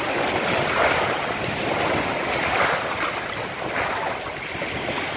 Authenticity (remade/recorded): recorded